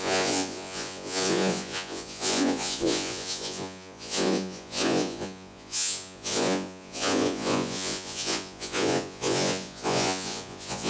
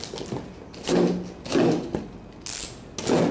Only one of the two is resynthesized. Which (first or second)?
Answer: first